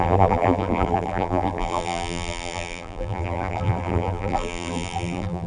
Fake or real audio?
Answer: fake